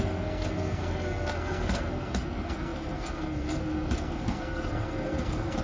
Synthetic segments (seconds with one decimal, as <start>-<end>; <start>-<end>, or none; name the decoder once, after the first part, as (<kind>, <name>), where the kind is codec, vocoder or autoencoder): 0.0-5.6 (codec, SNAC)